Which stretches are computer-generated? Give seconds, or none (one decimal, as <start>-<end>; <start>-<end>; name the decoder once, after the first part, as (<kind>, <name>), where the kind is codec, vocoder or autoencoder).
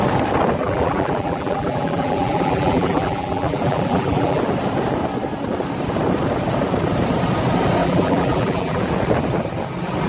0.6-4.4 (vocoder, BigVGAN v2); 7.8-8.8